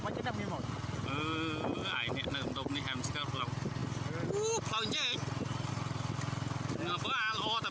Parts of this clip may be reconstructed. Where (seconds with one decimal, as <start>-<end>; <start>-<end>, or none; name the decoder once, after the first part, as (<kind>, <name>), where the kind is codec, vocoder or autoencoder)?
none